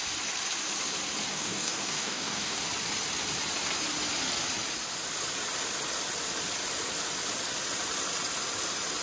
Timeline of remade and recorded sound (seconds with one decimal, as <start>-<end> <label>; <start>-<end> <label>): 0.0-1.3 recorded; 1.3-2.6 remade; 2.6-9.0 recorded